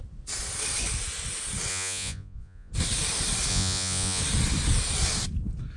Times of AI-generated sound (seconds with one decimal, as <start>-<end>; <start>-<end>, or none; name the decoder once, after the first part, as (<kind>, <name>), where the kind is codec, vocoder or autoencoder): 1.7-2.7 (vocoder, Vocos); 3.5-4.2

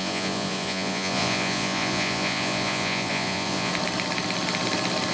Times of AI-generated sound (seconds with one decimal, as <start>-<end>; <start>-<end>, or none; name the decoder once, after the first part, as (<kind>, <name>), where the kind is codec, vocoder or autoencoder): 0.0-3.7 (vocoder, Vocos)

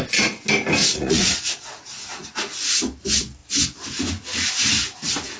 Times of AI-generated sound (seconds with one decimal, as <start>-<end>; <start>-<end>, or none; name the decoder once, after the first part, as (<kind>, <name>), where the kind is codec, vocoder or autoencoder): 0.8-2.7 (vocoder, Vocos)

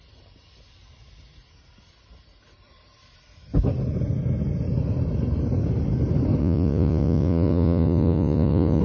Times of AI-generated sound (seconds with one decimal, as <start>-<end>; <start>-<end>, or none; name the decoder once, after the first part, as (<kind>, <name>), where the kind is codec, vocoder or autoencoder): 6.4-8.8 (vocoder, Vocos)

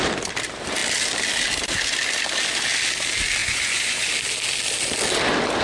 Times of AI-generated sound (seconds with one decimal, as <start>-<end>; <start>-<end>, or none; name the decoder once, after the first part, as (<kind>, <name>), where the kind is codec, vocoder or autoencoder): 3.4-4.1 (vocoder, Vocos)

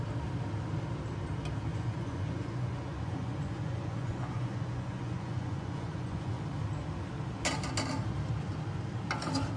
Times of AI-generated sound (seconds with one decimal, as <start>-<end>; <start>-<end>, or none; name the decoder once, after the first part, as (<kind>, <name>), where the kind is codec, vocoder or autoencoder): 1.7-6.4 (vocoder, Vocos)